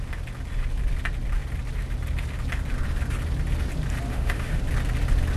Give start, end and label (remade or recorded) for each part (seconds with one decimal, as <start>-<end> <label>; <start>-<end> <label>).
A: 0.0-4.1 recorded; 4.1-4.6 remade; 4.6-5.4 recorded